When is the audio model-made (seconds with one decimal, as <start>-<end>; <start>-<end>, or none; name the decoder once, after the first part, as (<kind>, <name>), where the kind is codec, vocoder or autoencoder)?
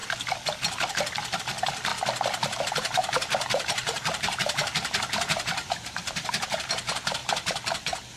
1.4-1.9 (vocoder, BigVGAN v2); 2.6-8.2